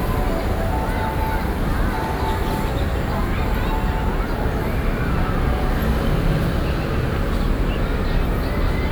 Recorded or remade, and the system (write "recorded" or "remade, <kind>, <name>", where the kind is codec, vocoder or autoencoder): recorded